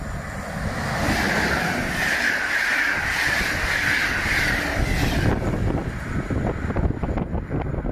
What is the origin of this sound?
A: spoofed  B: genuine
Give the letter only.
B